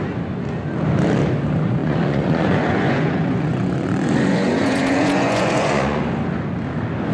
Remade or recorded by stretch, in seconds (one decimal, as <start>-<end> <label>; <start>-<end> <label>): 0.0-1.8 recorded; 1.8-6.0 remade; 6.0-7.1 recorded

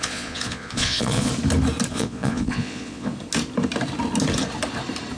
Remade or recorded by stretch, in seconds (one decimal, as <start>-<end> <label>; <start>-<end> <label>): 0.0-1.3 remade; 1.3-1.9 recorded; 1.9-3.1 remade; 3.1-5.2 recorded

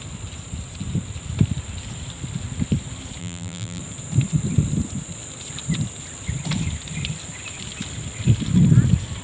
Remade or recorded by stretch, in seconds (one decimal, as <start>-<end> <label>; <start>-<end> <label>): 0.0-3.2 recorded; 3.2-3.8 remade; 3.8-9.2 recorded

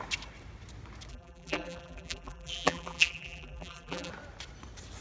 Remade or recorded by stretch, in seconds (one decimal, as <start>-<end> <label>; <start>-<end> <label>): 0.0-1.1 recorded; 1.1-4.1 remade; 4.1-5.0 recorded

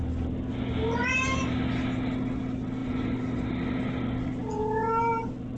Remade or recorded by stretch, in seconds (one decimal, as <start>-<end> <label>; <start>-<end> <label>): 0.0-2.8 recorded; 2.8-3.4 remade; 3.4-5.6 recorded

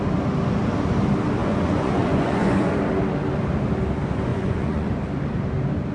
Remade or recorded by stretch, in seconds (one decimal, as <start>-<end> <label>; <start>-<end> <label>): 0.0-1.4 recorded; 1.4-2.7 remade; 2.7-4.3 recorded; 4.3-4.9 remade; 4.9-5.9 recorded

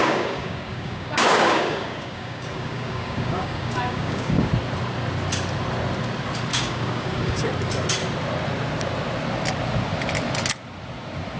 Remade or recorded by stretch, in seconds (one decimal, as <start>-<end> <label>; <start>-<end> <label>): 0.0-4.5 remade; 4.5-6.5 recorded; 6.5-7.5 remade; 7.5-11.4 recorded